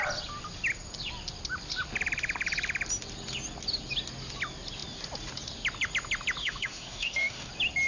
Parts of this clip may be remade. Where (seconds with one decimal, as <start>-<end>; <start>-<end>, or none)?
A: 6.4-7.5